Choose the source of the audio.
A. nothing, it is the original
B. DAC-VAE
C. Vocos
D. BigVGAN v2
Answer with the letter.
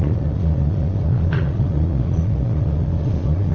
C